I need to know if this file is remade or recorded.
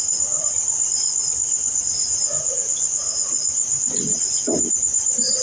recorded